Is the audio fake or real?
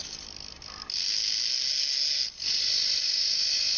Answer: real